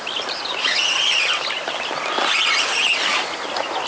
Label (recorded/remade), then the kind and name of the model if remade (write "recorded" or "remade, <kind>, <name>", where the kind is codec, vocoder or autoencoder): recorded